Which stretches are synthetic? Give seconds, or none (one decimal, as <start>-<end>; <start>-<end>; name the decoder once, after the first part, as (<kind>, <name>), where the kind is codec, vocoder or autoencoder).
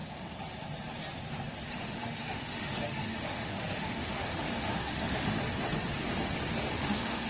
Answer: 1.7-5.4 (autoencoder, DAC-VAE); 6.7-7.3